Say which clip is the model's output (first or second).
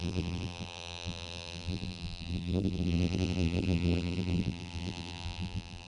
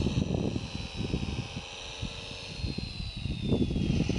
first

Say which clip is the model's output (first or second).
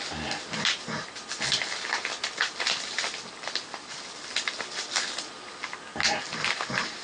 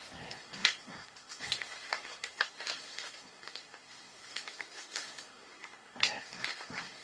second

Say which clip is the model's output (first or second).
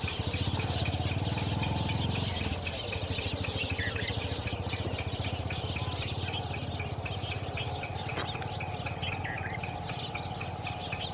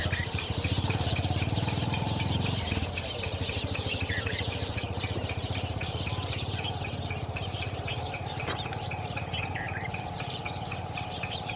second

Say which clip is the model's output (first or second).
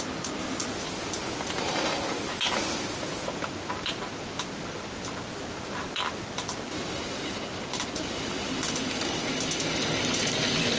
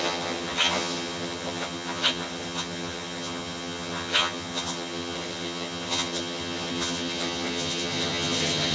second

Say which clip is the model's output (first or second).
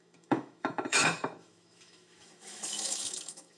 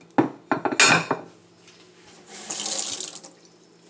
first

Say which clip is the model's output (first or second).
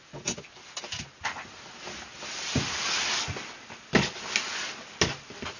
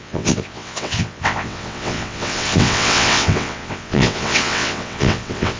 second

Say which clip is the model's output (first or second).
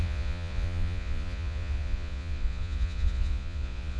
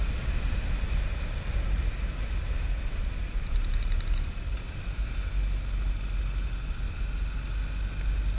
first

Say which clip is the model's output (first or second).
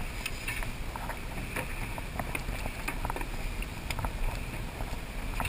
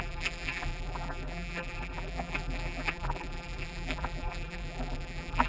second